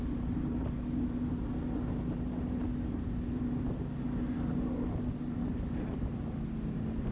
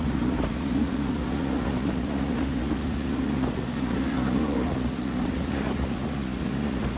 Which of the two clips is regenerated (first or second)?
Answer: second